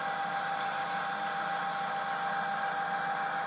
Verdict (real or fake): real